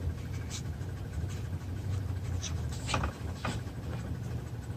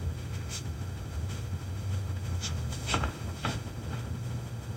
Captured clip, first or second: first